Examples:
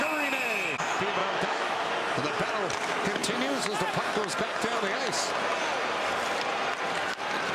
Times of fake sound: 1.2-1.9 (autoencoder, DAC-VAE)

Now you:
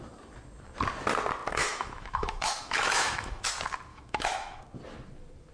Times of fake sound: 1.6-3.5 (autoencoder, DAC-VAE); 3.9-4.6

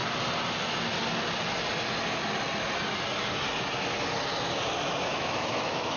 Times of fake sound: 5.1-6.0 (autoencoder, DAC-VAE)

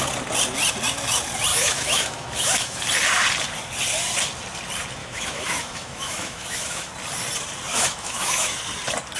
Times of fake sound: 1.5-2.8 (autoencoder, DAC-VAE); 5.0-6.9; 7.7-8.6

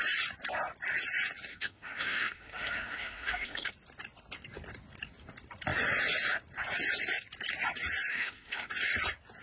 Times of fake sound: 1.5-3.7 (autoencoder, DAC-VAE); 8.1-8.7